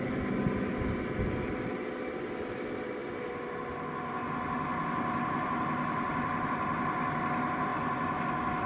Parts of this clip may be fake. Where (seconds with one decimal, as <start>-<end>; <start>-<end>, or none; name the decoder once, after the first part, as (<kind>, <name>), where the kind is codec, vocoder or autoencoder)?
none